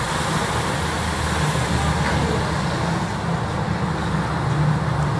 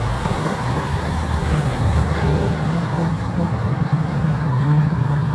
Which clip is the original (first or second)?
first